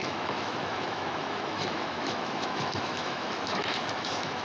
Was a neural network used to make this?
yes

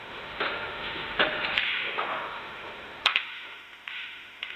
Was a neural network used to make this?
yes